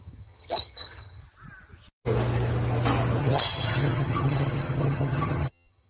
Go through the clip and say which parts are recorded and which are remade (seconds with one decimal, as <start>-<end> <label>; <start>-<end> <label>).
0.0-1.2 remade; 1.2-3.2 recorded; 3.2-5.9 remade